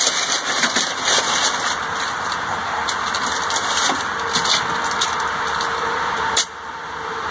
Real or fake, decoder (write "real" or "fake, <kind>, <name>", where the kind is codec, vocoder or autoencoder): real